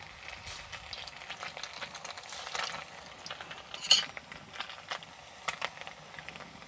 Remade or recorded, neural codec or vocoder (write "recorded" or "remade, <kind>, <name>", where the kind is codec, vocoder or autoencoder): recorded